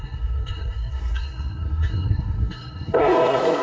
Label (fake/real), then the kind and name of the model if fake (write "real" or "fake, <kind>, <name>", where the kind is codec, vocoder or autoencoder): fake, codec, SNAC